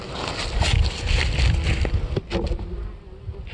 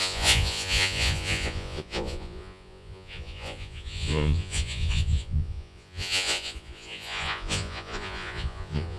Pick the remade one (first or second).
second